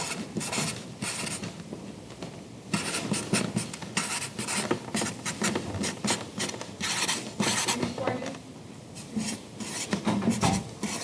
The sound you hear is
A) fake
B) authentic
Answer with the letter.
A